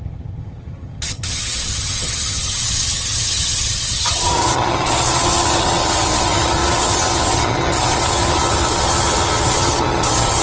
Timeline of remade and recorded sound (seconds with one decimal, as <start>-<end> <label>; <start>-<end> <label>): 0.0-10.4 remade